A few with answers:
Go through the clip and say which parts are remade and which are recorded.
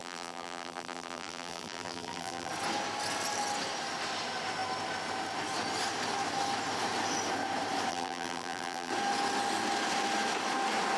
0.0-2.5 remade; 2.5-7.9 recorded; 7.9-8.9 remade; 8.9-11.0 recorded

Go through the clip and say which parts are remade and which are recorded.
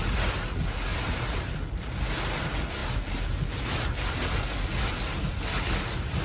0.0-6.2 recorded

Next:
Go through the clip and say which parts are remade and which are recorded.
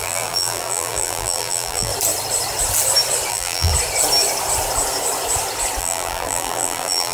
0.0-1.9 remade; 1.9-3.3 recorded; 3.3-3.7 remade; 3.7-5.8 recorded; 5.8-7.1 remade